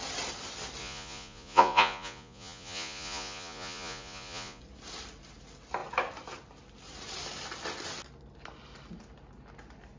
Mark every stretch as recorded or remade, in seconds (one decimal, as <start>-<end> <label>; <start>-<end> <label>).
0.0-0.8 recorded; 0.8-4.6 remade; 4.6-10.0 recorded